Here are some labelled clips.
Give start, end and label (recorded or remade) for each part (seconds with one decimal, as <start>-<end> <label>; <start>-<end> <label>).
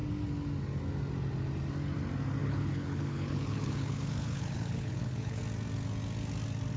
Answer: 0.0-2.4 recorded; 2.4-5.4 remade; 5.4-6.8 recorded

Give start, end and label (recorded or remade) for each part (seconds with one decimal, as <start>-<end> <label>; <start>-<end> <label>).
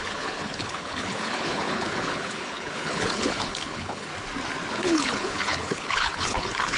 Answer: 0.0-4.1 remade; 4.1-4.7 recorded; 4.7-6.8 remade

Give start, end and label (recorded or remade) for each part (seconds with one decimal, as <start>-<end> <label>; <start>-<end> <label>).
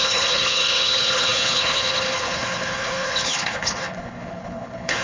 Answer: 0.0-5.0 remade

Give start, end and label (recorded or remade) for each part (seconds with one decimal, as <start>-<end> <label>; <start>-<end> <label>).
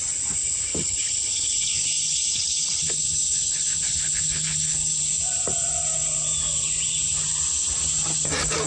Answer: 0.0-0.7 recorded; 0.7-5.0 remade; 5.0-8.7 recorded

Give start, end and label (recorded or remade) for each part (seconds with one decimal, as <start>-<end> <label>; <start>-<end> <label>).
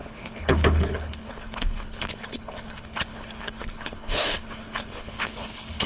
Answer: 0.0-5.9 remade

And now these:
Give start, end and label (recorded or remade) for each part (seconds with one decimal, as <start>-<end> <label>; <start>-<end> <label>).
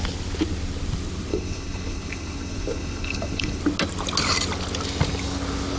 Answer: 0.0-1.3 recorded; 1.3-3.6 remade; 3.6-5.8 recorded